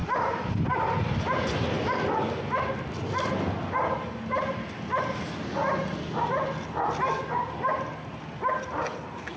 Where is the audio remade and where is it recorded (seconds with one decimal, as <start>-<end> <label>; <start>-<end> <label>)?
0.0-9.4 recorded